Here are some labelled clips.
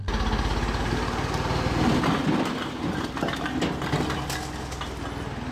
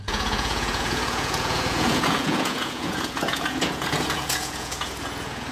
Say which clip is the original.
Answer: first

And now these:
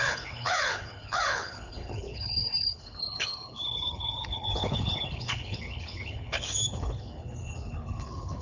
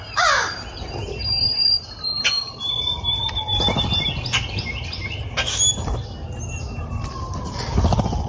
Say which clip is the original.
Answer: second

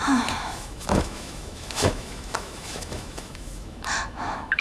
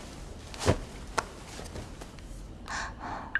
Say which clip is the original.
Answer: second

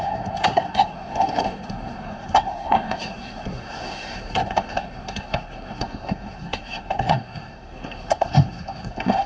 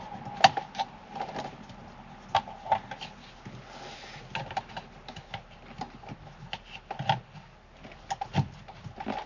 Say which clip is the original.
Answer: second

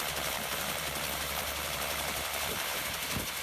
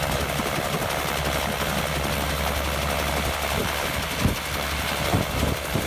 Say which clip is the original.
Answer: second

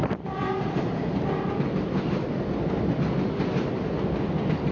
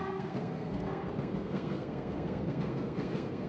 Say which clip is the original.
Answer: first